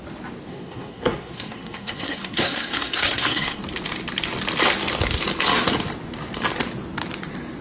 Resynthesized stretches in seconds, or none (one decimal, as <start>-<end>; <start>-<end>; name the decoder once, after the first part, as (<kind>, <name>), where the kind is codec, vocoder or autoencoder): 0.5-3.6 (codec, SNAC)